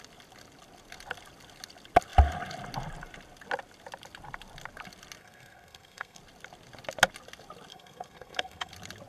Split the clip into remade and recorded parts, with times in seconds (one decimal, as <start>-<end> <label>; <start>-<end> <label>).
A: 0.0-5.2 recorded; 5.2-6.2 remade; 6.2-7.7 recorded; 7.7-8.7 remade; 8.7-9.1 recorded